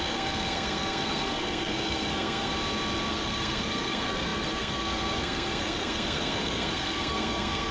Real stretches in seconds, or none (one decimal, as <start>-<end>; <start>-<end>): 2.5-3.1